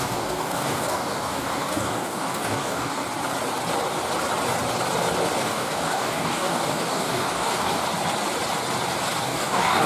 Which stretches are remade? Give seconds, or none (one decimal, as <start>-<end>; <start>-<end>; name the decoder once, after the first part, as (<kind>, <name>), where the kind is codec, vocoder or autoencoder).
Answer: 0.0-3.0 (codec, DAC); 5.4-7.8; 9.2-9.9